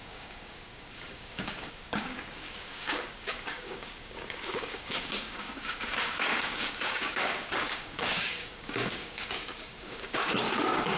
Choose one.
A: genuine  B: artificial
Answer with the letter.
B